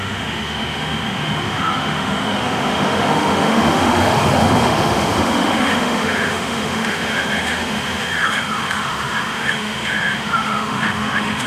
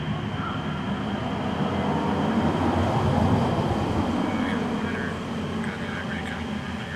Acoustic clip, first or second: second